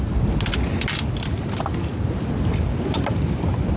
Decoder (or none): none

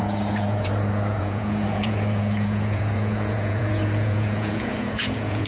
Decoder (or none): vocoder, Vocos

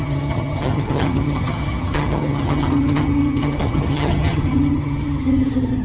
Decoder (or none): vocoder, HiFi-GAN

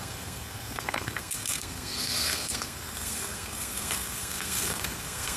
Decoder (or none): codec, SNAC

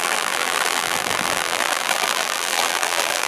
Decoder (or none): vocoder, BigVGAN v2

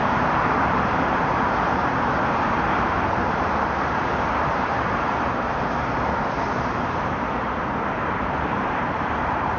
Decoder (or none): vocoder, BigVGAN v2